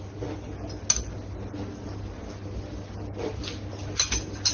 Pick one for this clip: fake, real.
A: real